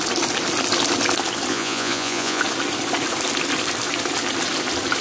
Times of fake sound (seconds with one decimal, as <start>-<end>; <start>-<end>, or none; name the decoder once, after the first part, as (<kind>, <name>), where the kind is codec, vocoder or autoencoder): 1.5-2.4 (vocoder, Vocos)